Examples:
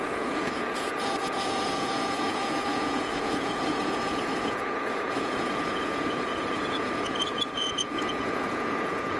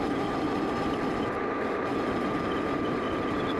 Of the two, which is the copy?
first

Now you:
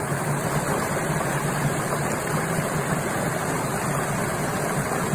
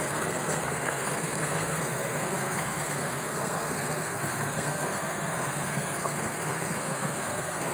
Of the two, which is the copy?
second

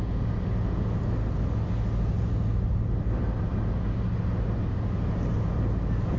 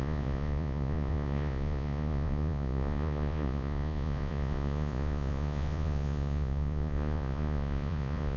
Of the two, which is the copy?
second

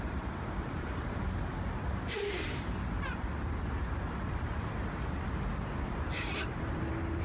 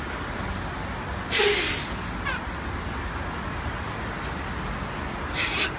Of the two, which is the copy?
first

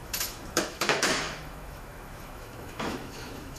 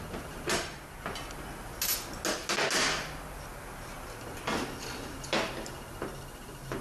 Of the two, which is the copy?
first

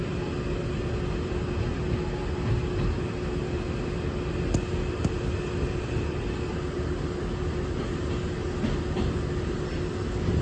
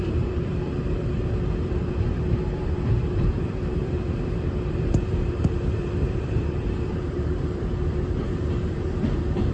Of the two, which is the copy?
second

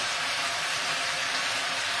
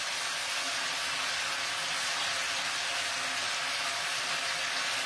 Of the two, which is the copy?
first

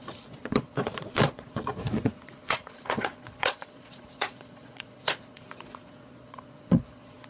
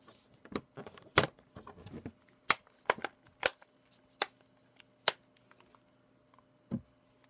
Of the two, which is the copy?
first